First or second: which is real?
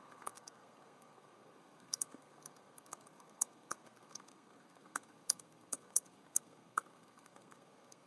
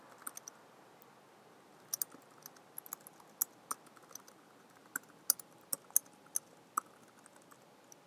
second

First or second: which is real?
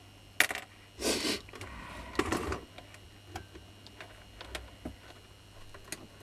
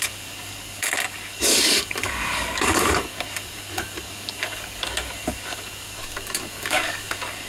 first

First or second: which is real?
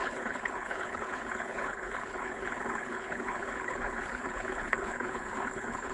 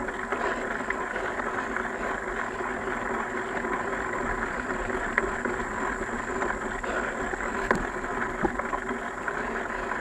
second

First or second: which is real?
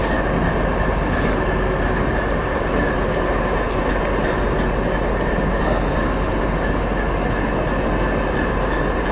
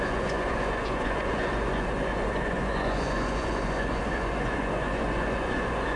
first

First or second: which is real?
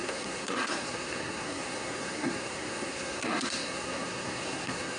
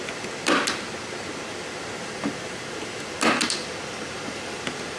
second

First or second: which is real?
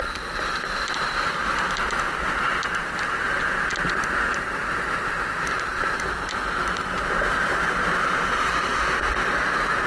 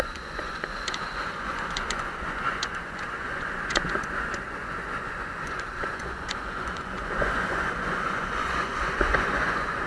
first